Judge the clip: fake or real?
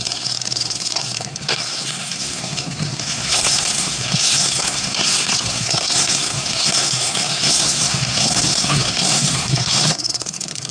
fake